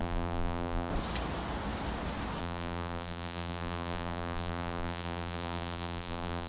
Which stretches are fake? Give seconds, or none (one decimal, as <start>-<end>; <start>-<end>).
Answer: 0.0-0.9; 2.4-6.5